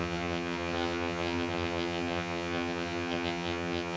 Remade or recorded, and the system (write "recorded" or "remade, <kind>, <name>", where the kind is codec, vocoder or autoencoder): remade, vocoder, HiFi-GAN